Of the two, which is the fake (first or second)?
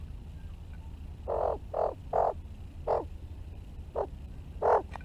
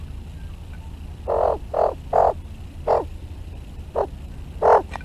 first